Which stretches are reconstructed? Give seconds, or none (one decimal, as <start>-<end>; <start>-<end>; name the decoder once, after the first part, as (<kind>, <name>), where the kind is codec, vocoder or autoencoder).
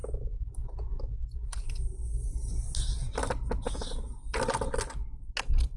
none